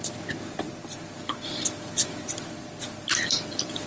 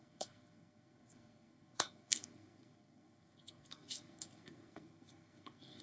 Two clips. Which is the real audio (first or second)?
first